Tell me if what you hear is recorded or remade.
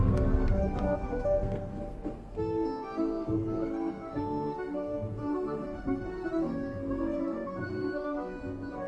remade